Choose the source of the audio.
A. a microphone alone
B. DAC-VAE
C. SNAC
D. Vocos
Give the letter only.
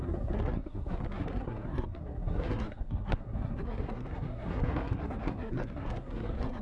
C